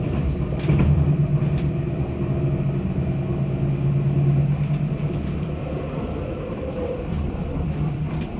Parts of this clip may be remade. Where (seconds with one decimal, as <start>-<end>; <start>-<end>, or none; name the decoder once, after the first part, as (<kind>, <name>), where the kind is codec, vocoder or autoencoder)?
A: 0.0-1.3 (vocoder, BigVGAN v2); 4.9-8.4